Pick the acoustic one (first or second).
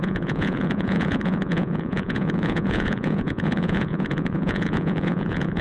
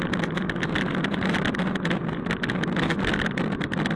second